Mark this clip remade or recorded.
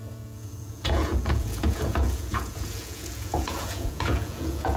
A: remade